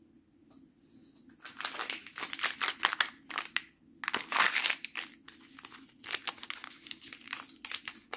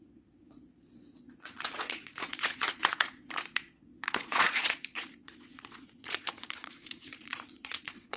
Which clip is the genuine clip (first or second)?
first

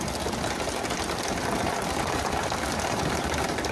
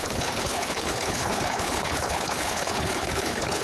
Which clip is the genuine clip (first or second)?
first